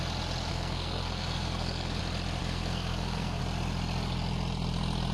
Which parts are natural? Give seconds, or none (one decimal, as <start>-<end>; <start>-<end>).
0.0-0.5; 2.0-2.4; 3.4-5.1